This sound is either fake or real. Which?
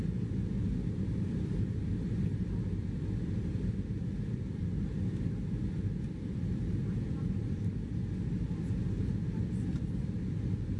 real